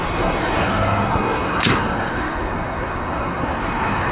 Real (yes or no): no